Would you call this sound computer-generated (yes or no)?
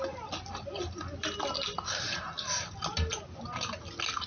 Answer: no